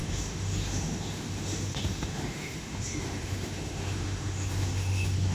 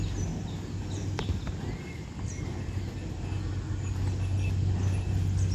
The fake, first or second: first